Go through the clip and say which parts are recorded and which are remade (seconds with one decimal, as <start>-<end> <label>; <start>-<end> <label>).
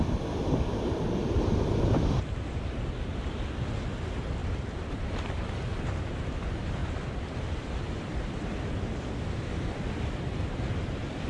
0.0-1.2 recorded; 1.2-2.2 remade; 2.2-4.4 recorded; 4.4-5.4 remade; 5.4-6.8 recorded; 6.8-11.3 remade